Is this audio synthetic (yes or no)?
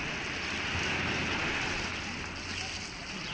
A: no